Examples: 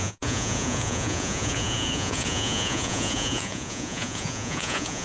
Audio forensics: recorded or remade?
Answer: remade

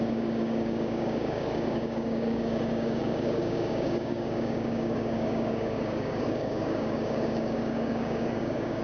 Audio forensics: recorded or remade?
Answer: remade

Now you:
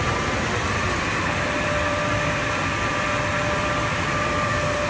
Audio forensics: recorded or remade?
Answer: remade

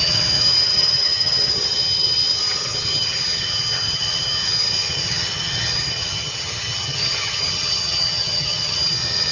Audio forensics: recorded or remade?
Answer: remade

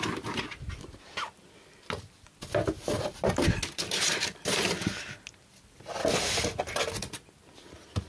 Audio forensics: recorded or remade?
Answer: recorded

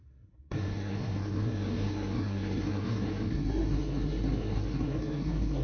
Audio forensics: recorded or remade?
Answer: remade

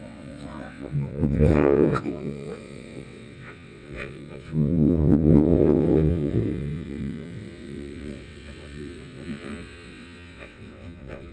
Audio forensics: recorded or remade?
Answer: remade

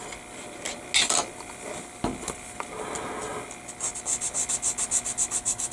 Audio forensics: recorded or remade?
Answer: recorded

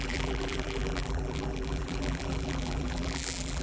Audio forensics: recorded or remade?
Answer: remade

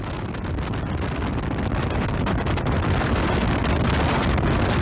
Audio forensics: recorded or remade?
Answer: recorded